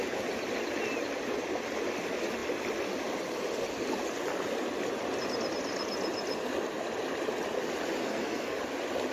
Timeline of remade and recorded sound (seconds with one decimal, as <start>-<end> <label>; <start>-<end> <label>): 0.0-8.0 recorded; 8.0-8.6 remade; 8.6-9.1 recorded